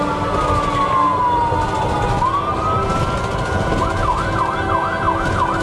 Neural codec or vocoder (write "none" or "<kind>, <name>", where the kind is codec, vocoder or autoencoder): none